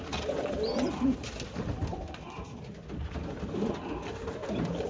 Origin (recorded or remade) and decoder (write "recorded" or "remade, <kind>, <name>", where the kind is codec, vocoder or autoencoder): recorded